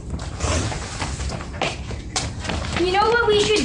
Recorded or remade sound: remade